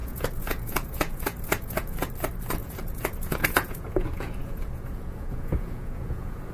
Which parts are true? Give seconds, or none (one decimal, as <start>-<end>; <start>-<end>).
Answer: 2.1-2.6